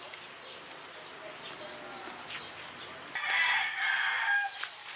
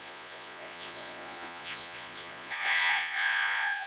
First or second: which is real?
first